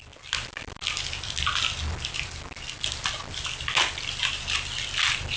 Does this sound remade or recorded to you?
recorded